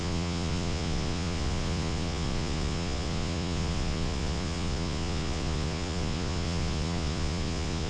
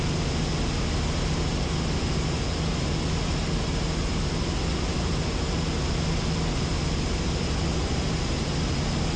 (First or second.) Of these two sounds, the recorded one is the second